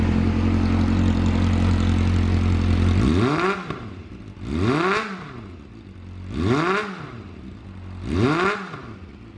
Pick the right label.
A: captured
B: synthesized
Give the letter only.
A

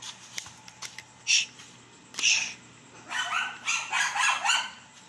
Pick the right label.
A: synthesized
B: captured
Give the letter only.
B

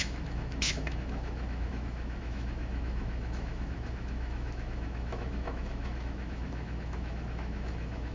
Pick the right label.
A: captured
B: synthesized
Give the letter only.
B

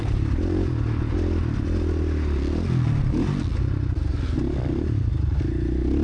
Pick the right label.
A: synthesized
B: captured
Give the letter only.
B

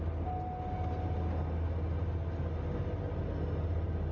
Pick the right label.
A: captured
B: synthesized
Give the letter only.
A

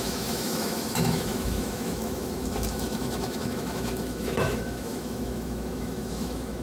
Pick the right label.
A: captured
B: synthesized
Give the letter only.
B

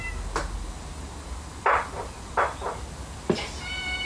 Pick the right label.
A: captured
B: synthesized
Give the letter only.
A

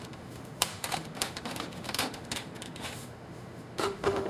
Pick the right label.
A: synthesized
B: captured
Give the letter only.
A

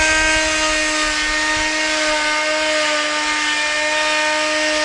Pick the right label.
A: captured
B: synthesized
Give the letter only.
A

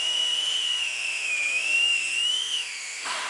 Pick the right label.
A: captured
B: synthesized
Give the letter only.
B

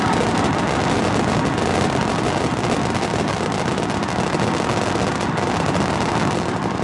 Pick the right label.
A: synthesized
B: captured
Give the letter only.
B